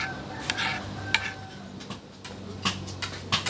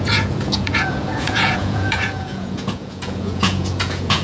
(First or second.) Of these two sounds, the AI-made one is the second